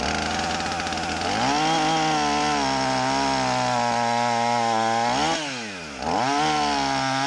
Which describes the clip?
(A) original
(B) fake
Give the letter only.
A